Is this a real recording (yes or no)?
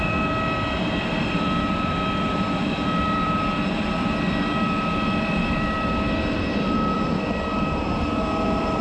no